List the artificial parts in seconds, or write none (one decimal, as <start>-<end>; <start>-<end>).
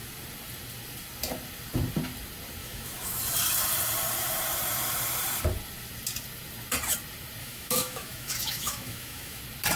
2.6-3.2; 7.4-9.4